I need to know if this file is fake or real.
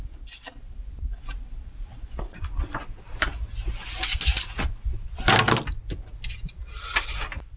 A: real